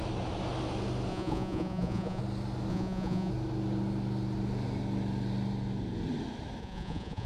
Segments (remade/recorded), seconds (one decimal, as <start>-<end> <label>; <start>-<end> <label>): 0.0-1.1 recorded; 1.1-2.2 remade; 2.2-2.7 recorded; 2.7-3.3 remade; 3.3-6.6 recorded; 6.6-7.3 remade